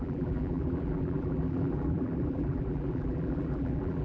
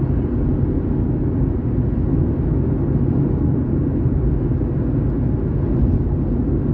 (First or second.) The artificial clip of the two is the first